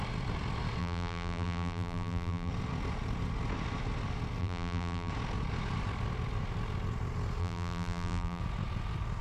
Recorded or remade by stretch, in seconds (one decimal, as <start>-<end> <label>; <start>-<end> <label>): 0.0-0.8 recorded; 0.8-2.5 remade; 2.5-4.4 recorded; 4.4-5.1 remade; 5.1-7.4 recorded; 7.4-8.4 remade; 8.4-9.2 recorded